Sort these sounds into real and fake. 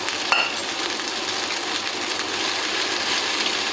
real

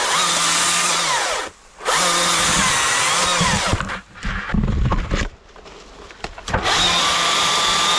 real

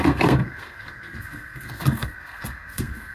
fake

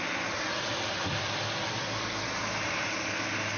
real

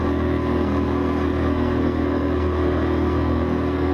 fake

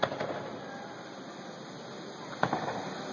real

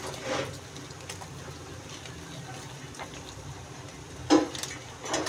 real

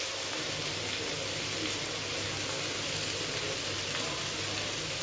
real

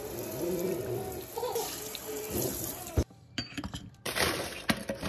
fake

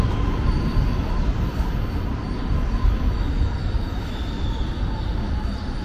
real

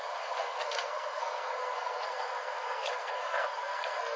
fake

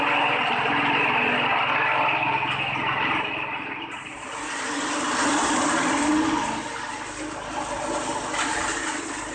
real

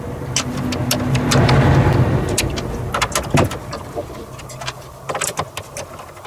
real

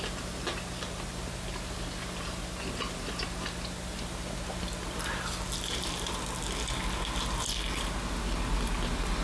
real